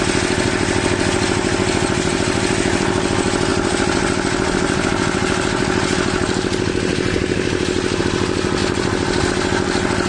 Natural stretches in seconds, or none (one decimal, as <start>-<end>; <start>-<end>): 0.0-10.1